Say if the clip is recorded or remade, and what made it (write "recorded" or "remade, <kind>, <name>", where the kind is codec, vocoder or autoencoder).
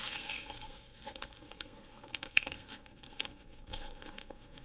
remade, codec, SNAC